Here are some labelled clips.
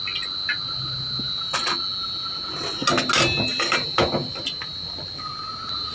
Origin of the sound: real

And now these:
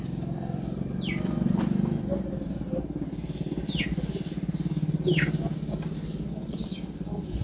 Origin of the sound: real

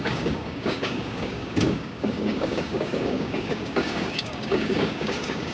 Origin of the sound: fake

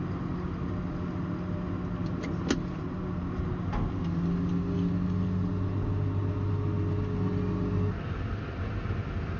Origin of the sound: real